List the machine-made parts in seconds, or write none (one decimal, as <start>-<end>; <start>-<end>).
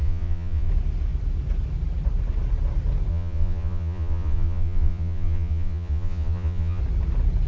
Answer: 0.0-0.7; 3.1-6.8